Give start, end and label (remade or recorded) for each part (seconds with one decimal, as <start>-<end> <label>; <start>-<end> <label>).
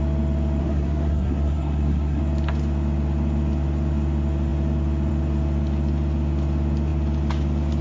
0.0-0.6 recorded; 0.6-2.2 remade; 2.2-7.8 recorded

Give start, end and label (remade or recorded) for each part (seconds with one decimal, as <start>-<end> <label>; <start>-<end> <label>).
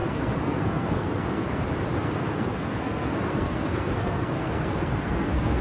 0.0-1.6 remade; 1.6-2.0 recorded; 2.0-5.6 remade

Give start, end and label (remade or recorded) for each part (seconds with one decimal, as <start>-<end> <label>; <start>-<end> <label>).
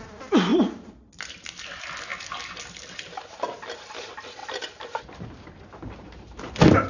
0.0-4.4 recorded; 4.4-6.4 remade; 6.4-6.9 recorded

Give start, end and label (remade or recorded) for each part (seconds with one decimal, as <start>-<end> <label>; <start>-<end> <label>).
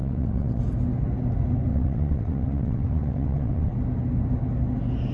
0.0-0.6 remade; 0.6-1.7 recorded; 1.7-3.7 remade; 3.7-5.1 recorded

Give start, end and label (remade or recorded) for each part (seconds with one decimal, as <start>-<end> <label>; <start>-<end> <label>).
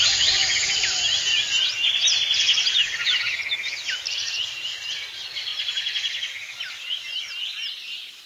0.0-5.5 recorded; 5.5-6.3 remade; 6.3-8.3 recorded